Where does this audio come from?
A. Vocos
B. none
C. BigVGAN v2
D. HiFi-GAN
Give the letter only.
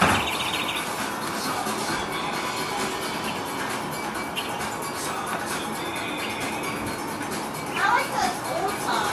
B